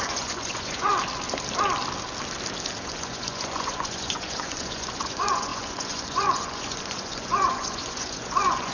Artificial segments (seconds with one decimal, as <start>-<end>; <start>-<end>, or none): 0.0-0.9; 2.8-8.7